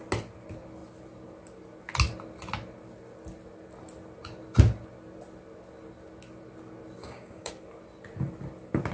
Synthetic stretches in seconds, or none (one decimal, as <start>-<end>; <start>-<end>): 7.0-7.5